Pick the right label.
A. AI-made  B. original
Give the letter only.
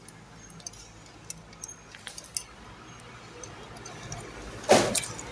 B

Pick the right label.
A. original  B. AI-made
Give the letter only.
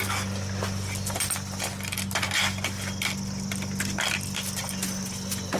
A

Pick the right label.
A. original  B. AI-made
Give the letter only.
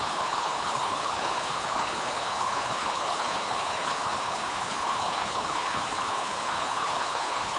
B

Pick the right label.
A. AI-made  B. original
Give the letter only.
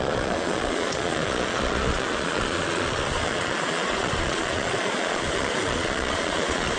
A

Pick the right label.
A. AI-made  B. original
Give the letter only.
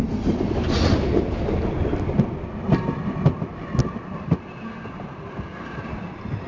B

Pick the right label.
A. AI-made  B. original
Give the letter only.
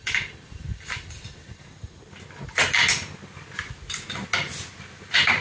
B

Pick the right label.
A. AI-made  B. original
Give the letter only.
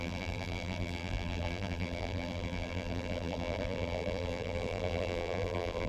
A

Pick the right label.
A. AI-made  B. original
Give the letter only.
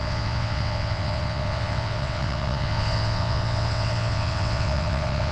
A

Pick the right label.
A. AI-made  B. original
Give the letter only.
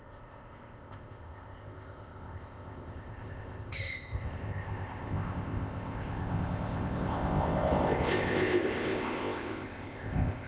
A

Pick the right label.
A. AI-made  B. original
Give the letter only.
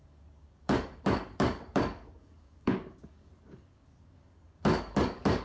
A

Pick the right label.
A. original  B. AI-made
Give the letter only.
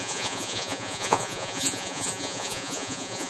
B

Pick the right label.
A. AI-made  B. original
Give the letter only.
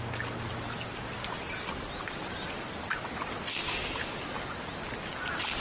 B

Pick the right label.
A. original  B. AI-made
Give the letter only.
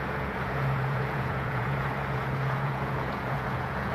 B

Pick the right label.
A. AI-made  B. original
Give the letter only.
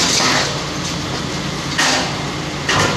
B